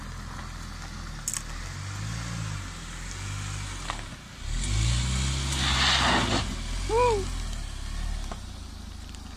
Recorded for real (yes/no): yes